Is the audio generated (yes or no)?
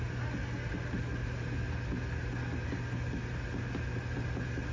no